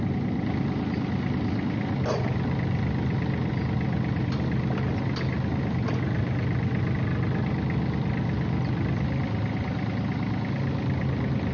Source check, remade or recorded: recorded